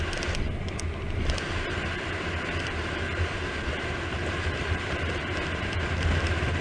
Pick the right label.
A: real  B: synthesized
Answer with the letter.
A